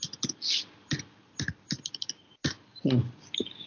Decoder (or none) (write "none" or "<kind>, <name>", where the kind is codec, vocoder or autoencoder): none